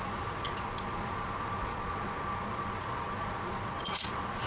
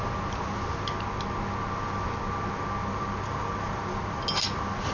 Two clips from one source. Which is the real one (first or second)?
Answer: second